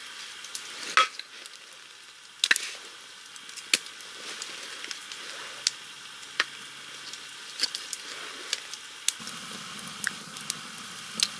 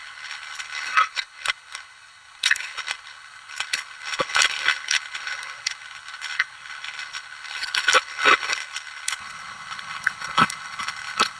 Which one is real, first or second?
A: first